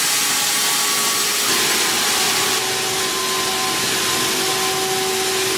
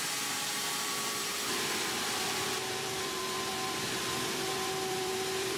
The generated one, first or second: second